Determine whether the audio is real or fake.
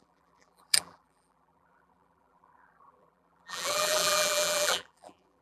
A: fake